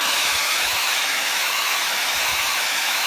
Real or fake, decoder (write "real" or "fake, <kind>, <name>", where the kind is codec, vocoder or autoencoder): fake, autoencoder, DAC-VAE